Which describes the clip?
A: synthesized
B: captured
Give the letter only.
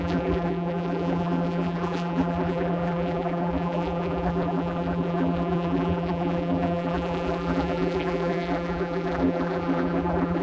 A